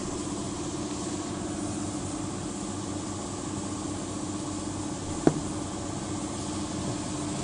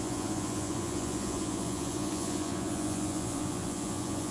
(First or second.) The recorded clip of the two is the first